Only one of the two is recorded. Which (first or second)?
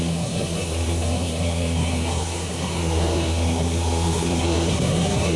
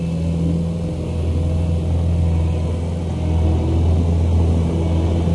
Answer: second